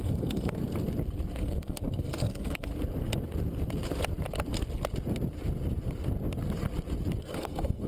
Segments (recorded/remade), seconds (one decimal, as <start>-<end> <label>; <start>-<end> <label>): 0.0-0.6 remade; 0.6-1.4 recorded; 1.4-2.7 remade; 2.7-7.2 recorded; 7.2-7.9 remade